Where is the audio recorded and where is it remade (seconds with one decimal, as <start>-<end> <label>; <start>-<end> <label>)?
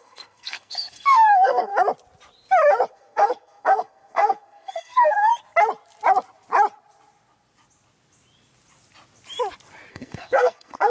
0.0-1.7 remade; 1.7-2.9 recorded; 2.9-5.3 remade; 5.3-9.9 recorded; 9.9-10.9 remade